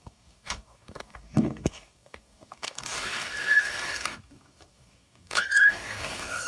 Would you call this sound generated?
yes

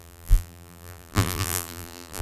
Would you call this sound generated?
yes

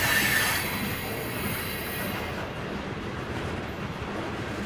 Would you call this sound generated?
no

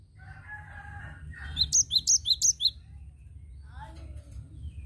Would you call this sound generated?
no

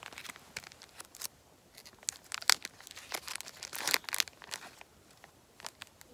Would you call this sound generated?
no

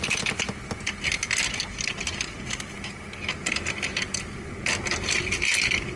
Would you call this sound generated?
no